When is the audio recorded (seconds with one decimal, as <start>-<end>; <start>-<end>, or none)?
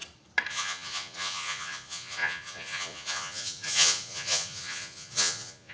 0.0-0.5